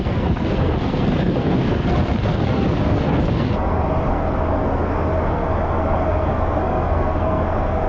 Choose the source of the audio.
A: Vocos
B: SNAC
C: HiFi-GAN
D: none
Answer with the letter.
B